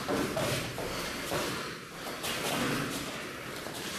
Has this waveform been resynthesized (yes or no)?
no